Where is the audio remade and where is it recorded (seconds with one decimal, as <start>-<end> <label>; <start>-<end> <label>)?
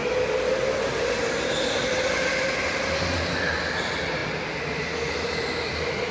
0.0-6.1 recorded